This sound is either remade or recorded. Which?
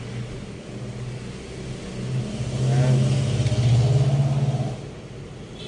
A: recorded